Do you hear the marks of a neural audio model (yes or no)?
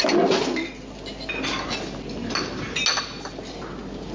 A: no